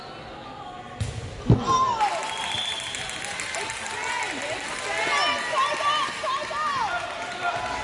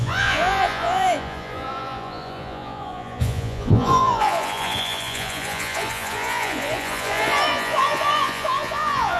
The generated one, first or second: second